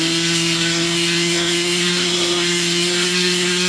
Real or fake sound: fake